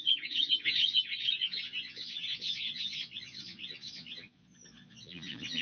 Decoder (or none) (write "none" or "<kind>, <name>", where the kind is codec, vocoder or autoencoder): vocoder, Vocos